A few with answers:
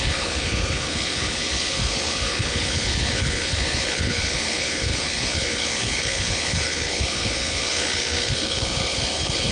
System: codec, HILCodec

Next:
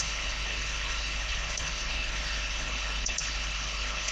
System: codec, HILCodec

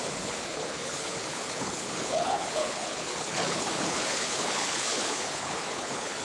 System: codec, HILCodec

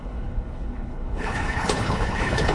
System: codec, HILCodec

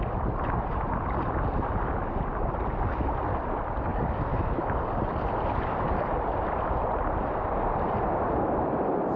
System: none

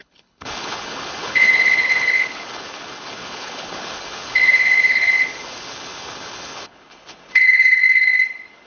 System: codec, HILCodec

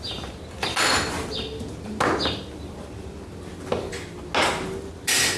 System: none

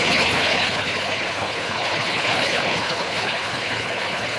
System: codec, HILCodec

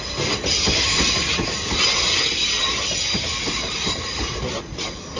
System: none